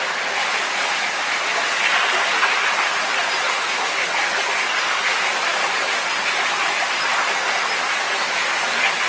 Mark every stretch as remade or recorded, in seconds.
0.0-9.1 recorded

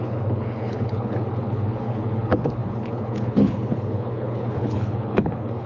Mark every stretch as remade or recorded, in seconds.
0.0-5.7 remade

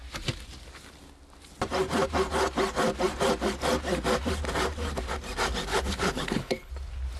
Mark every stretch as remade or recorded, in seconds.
0.0-5.7 recorded; 5.7-6.7 remade; 6.7-7.2 recorded

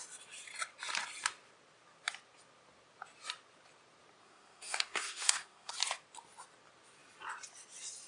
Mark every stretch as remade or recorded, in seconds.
0.0-4.2 recorded; 4.2-5.7 remade; 5.7-8.1 recorded

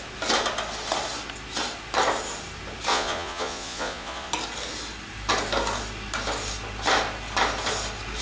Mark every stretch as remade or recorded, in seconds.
0.0-2.9 recorded; 2.9-4.3 remade; 4.3-8.2 recorded

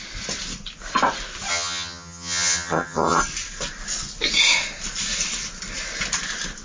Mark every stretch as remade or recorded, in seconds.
0.0-1.5 recorded; 1.5-3.2 remade; 3.2-6.6 recorded

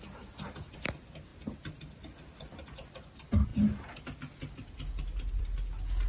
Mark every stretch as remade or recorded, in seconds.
0.0-6.1 recorded

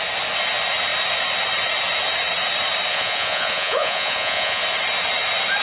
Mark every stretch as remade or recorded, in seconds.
0.0-2.9 recorded; 2.9-4.6 remade; 4.6-5.6 recorded